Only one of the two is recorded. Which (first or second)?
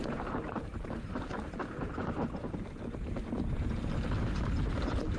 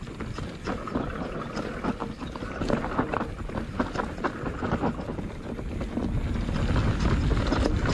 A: second